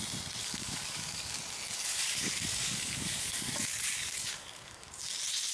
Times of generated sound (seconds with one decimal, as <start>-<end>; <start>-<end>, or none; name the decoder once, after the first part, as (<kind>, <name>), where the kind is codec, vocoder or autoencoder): 0.4-1.4 (codec, DAC); 1.9-4.9